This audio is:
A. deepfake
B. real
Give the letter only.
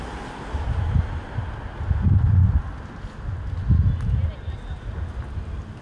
B